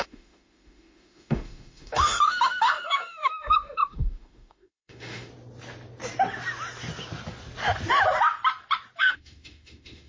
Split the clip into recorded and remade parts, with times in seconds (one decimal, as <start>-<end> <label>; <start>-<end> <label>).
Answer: 0.0-5.3 remade; 5.3-9.0 recorded; 9.0-10.1 remade